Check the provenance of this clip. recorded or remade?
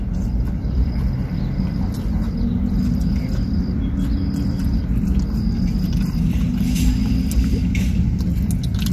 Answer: recorded